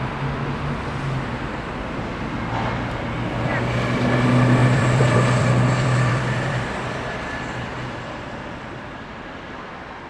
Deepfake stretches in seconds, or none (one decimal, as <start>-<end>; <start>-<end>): 4.6-9.7